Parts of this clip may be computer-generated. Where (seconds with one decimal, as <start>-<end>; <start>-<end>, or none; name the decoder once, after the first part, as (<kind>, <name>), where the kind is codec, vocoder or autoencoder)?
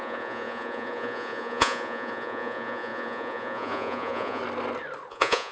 0.0-4.4 (vocoder, Vocos); 5.1-5.5